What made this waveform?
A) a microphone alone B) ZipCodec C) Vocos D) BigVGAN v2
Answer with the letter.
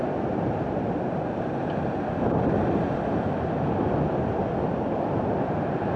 A